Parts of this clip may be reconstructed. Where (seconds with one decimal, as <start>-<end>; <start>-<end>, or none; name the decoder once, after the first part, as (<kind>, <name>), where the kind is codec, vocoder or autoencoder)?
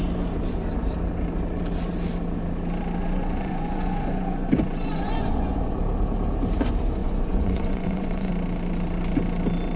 3.0-5.8 (vocoder, Vocos); 7.0-8.3